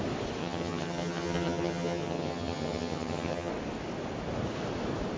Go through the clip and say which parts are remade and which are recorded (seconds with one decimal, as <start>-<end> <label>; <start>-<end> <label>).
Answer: 0.0-0.4 recorded; 0.4-3.5 remade; 3.5-5.2 recorded